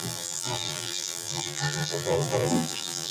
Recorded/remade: remade